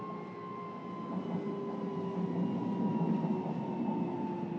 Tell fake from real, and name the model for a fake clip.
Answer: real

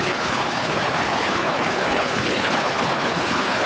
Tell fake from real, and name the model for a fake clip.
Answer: fake, codec, HILCodec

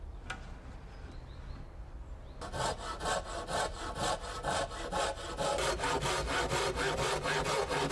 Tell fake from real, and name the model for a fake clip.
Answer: real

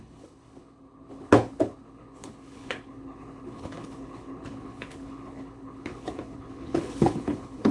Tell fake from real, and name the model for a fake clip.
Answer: fake, codec, HILCodec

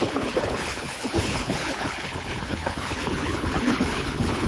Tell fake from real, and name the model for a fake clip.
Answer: fake, codec, HILCodec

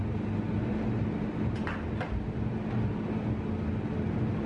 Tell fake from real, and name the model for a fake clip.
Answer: real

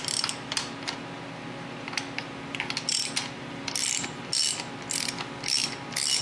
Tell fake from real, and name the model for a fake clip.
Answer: real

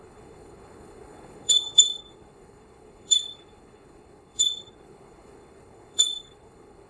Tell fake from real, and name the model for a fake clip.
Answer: fake, codec, HILCodec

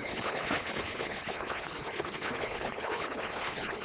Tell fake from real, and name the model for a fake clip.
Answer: fake, codec, HILCodec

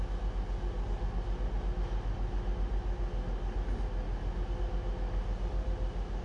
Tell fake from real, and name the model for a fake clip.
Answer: real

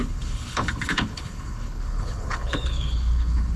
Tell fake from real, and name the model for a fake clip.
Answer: fake, codec, HILCodec